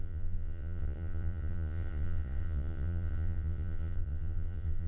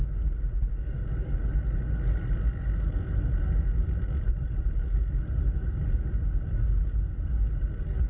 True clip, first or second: second